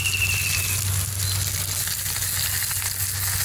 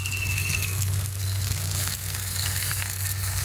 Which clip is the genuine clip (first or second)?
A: first